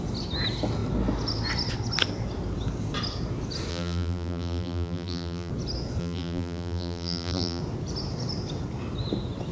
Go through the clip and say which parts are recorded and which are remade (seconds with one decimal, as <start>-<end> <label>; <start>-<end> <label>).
0.0-3.7 recorded; 3.7-5.5 remade; 5.5-6.0 recorded; 6.0-7.6 remade; 7.6-9.5 recorded